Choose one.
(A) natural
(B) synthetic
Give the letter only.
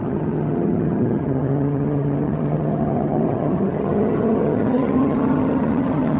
B